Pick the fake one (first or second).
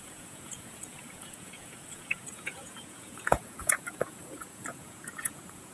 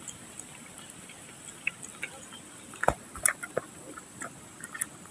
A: first